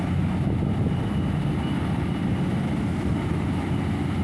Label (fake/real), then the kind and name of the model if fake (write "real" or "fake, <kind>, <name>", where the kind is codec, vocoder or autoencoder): real